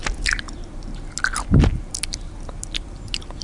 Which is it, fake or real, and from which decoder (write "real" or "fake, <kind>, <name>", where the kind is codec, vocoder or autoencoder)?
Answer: real